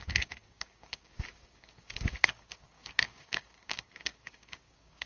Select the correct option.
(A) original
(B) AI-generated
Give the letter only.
B